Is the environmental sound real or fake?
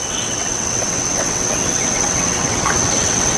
fake